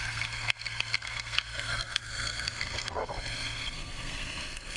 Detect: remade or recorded remade